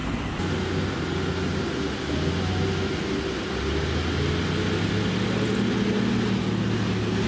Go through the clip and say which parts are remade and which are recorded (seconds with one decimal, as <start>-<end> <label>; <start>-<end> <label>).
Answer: 0.0-7.3 recorded